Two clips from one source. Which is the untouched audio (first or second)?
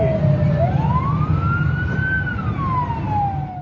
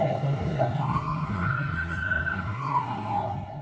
first